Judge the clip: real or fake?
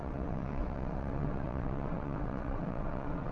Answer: fake